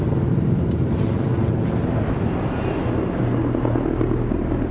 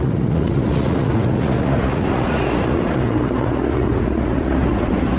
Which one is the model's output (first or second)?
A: second